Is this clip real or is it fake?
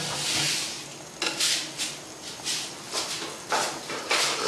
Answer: real